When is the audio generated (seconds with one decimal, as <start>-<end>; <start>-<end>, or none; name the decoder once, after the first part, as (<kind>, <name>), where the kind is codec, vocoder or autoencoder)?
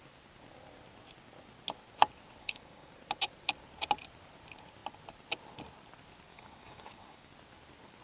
2.4-2.9 (codec, DAC); 6.3-7.3